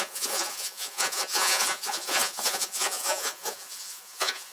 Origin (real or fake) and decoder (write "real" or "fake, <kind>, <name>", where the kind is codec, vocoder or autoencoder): fake, vocoder, Vocos